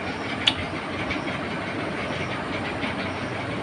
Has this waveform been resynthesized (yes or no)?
no